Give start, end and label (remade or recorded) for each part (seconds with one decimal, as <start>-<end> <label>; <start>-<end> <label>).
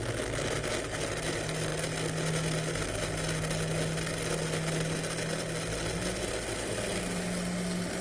0.0-8.0 recorded